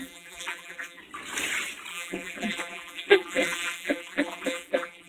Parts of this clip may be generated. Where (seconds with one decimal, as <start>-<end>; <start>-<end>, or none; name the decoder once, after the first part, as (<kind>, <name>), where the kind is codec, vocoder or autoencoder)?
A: 0.0-1.0 (vocoder, BigVGAN v2); 1.9-5.1